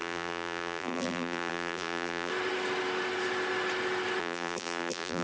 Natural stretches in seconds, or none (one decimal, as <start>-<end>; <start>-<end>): 2.3-4.2